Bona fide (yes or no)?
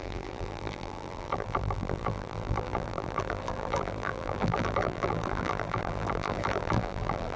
no